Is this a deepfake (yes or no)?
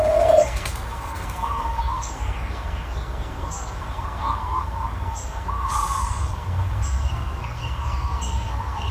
yes